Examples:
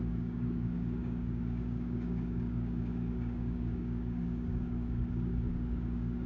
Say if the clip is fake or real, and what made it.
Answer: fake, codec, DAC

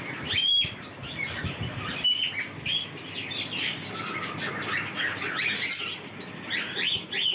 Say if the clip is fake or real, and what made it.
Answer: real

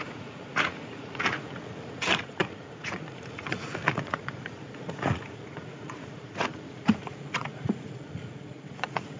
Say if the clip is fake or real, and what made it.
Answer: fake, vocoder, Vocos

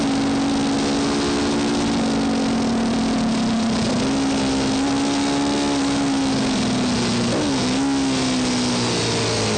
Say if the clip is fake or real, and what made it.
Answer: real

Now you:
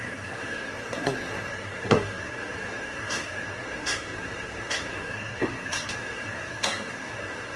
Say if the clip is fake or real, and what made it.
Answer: fake, codec, SNAC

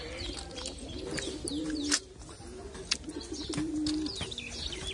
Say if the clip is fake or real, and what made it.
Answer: real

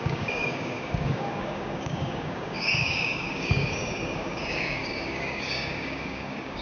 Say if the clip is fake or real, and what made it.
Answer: fake, codec, DAC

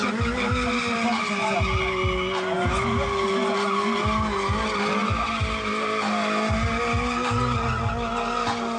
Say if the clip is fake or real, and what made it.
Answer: real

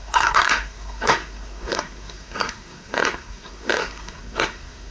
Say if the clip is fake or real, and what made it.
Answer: fake, codec, SNAC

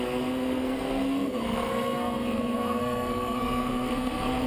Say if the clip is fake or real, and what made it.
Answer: fake, codec, SNAC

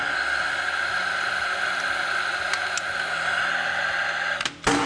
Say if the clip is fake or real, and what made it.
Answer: real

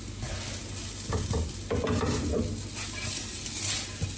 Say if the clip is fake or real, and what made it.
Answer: real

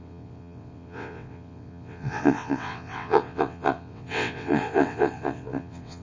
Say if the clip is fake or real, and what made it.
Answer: fake, vocoder, WaveNeXt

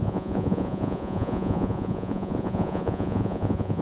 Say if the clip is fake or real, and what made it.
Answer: fake, vocoder, Vocos